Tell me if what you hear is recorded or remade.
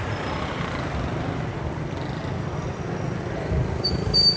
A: recorded